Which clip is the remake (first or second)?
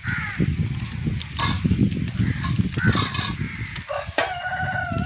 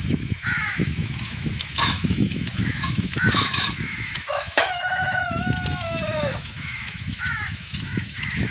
second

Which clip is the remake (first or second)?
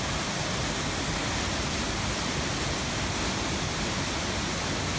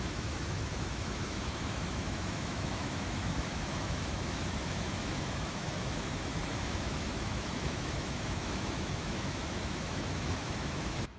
second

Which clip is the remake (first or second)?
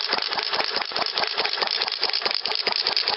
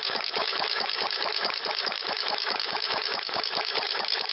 second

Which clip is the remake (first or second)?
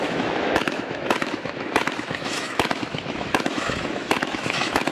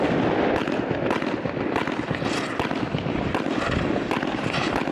first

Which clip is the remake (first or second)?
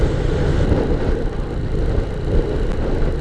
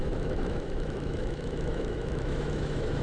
second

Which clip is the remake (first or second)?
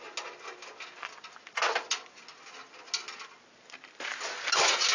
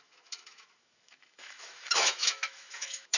second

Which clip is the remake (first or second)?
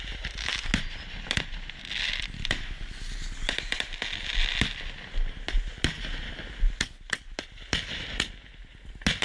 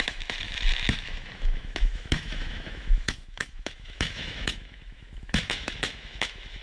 second